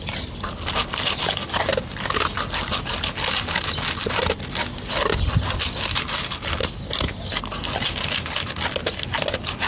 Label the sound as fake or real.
real